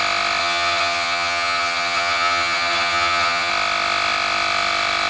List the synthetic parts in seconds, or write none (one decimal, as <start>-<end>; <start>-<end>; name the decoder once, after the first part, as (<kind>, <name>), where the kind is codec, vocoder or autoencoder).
0.4-3.5 (vocoder, HiFi-GAN)